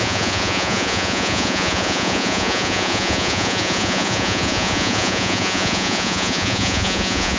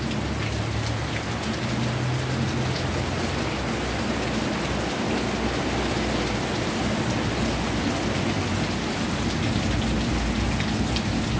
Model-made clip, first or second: first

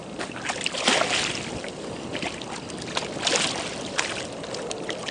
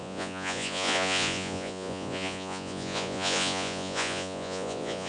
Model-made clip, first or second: second